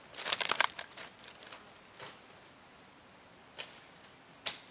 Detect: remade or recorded recorded